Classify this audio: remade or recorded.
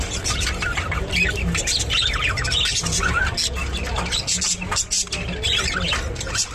recorded